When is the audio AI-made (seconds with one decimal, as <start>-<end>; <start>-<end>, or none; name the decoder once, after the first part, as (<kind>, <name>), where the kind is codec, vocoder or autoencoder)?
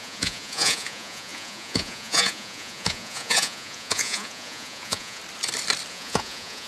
0.0-5.2 (vocoder, Vocos); 5.9-6.7